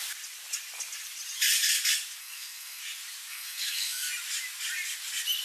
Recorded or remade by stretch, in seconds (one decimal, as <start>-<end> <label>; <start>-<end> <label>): 0.0-2.2 recorded; 2.2-2.8 remade; 2.8-3.3 recorded; 3.3-4.1 remade; 4.1-5.4 recorded